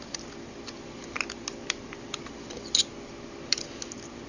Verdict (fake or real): real